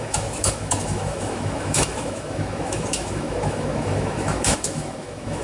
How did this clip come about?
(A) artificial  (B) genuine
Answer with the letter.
A